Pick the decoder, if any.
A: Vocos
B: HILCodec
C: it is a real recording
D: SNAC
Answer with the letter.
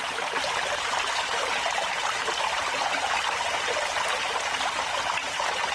C